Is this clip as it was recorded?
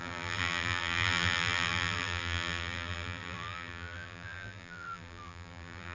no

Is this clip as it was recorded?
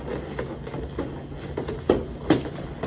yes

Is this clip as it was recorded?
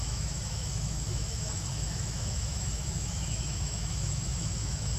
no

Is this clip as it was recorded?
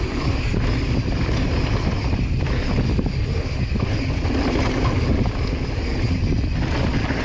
yes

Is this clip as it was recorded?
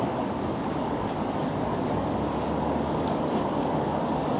no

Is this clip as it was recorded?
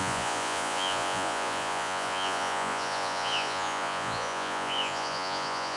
no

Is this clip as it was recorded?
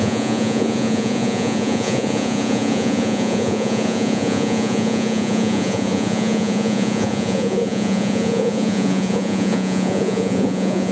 no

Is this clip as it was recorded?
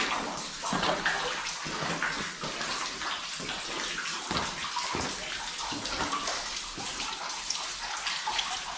yes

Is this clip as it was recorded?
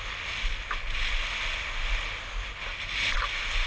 yes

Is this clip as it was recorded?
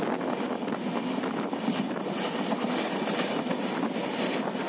yes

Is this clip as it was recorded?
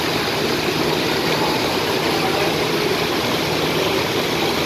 yes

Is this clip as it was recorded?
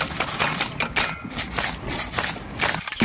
yes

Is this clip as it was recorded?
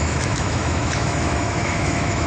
no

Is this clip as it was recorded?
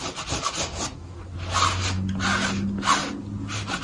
yes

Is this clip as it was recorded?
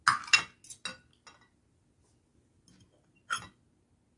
yes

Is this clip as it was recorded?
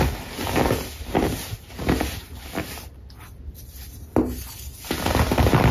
yes